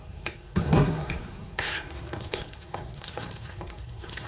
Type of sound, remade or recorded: remade